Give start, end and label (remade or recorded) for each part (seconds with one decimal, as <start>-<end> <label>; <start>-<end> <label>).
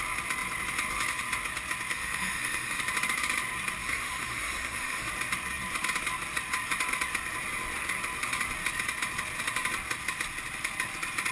0.0-1.9 recorded; 1.9-2.8 remade; 2.8-3.8 recorded; 3.8-5.1 remade; 5.1-11.3 recorded